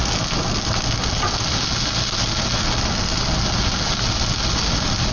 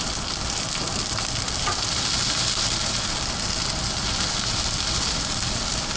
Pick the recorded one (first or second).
first